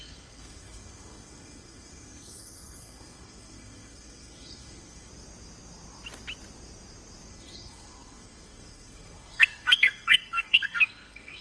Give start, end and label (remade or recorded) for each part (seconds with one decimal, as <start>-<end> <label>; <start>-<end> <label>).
0.0-5.1 remade; 5.1-7.3 recorded; 7.3-11.4 remade